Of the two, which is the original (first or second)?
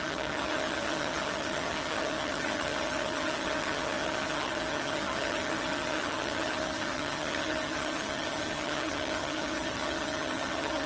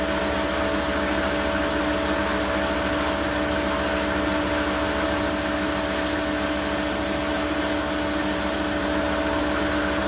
second